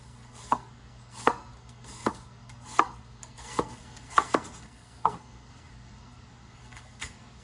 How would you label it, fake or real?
fake